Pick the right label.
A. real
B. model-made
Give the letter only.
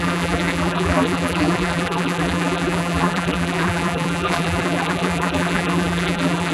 B